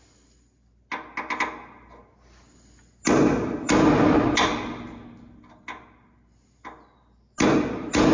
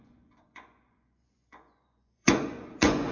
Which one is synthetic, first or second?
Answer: second